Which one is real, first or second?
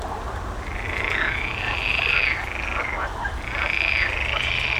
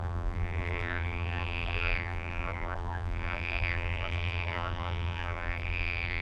first